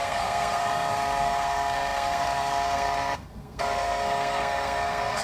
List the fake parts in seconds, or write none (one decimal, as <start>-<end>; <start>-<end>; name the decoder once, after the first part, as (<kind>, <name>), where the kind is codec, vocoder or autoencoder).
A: 0.0-5.2 (codec, SNAC)